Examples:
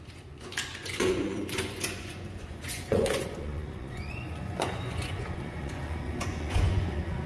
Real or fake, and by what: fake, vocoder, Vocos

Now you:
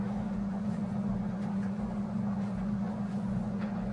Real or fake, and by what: fake, vocoder, Vocos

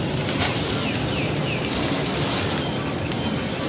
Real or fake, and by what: real